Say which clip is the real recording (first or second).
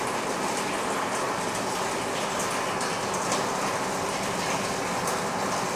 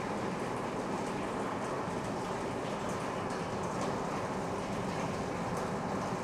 first